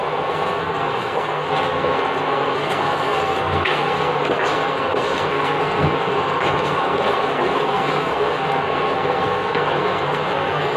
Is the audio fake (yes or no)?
yes